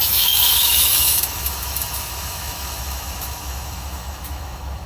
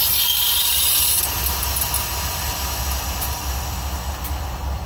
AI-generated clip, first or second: first